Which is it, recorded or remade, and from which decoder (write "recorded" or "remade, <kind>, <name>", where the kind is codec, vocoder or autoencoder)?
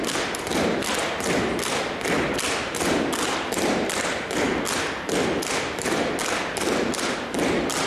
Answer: recorded